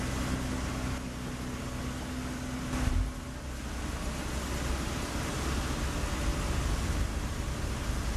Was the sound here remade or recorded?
recorded